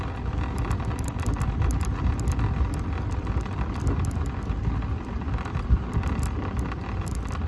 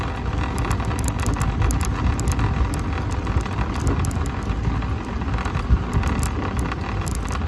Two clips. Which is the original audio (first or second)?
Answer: second